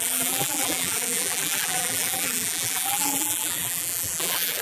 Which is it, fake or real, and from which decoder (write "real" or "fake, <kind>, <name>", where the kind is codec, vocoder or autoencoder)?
fake, vocoder, BigVGAN v2